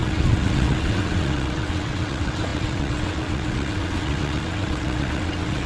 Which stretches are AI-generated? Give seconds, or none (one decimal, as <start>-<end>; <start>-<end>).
0.0-5.7